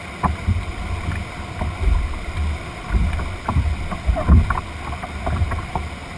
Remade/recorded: recorded